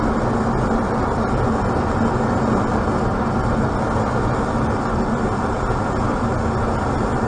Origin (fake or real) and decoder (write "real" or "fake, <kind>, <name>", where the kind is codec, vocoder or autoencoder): real